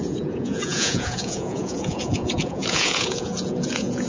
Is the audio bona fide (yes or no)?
no